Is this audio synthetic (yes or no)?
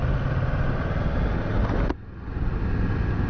no